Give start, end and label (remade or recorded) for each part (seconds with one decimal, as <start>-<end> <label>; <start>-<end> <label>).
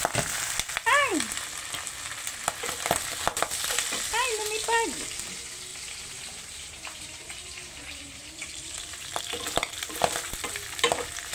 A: 0.0-5.7 recorded; 5.7-9.2 remade; 9.2-11.3 recorded